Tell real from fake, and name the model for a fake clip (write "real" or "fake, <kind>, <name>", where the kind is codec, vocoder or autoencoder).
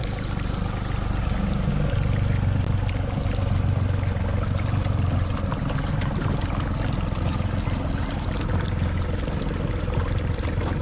real